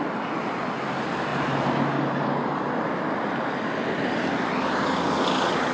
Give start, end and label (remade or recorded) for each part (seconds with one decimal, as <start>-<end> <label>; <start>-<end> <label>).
0.0-5.7 recorded

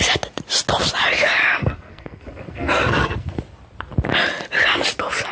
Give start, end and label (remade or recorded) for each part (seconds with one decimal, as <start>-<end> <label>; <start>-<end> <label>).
0.0-1.6 recorded; 1.6-3.4 remade; 3.4-5.3 recorded